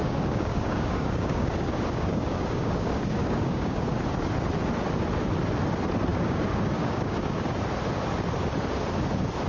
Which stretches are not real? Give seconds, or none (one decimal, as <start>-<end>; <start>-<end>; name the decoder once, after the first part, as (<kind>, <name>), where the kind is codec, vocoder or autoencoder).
0.0-3.8 (codec, DAC); 6.1-7.5